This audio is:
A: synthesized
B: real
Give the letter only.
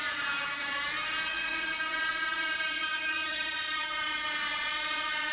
A